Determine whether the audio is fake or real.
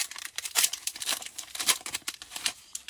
fake